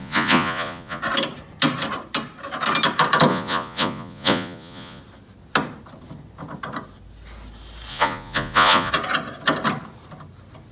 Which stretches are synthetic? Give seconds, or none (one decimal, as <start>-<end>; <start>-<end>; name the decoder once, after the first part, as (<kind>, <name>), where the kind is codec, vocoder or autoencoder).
0.0-1.0 (vocoder, Vocos); 3.3-5.0; 7.9-8.9